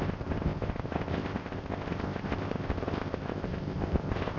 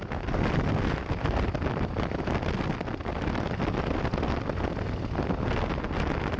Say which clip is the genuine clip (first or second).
second